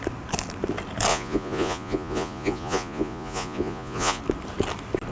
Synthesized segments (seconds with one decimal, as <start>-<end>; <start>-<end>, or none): 1.1-4.2

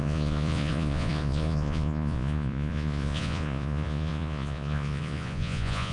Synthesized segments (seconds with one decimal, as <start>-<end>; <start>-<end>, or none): 0.0-5.9

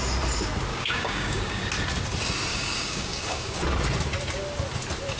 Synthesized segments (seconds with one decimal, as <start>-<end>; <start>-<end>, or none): 0.7-1.6; 2.5-3.6